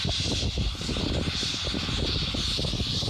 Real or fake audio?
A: real